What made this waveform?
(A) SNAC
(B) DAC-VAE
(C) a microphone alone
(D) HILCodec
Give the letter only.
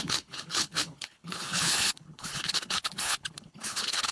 D